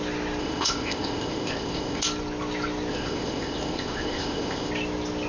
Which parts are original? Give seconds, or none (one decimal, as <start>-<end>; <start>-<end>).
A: 0.0-0.4; 2.0-2.9; 4.7-5.3